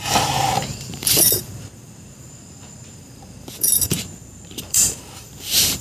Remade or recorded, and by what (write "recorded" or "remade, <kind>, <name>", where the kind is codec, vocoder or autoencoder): remade, vocoder, BigVGAN v2